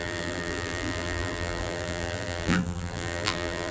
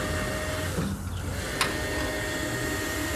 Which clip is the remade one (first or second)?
first